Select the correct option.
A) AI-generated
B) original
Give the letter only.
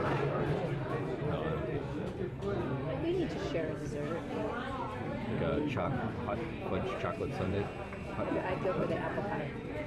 A